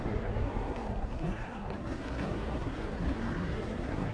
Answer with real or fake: fake